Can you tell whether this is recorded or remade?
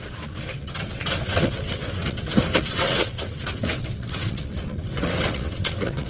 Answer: remade